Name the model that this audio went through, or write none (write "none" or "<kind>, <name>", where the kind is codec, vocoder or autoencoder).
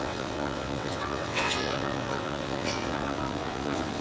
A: vocoder, WaveNeXt